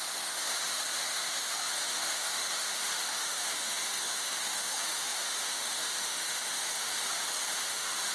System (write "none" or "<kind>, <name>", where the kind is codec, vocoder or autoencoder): autoencoder, DAC-VAE